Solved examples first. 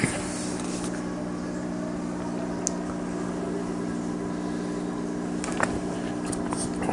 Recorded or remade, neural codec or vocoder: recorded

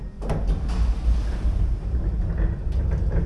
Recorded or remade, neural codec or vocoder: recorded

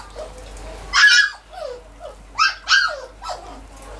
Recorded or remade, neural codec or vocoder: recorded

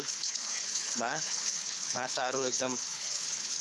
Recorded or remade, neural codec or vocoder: remade, codec, HILCodec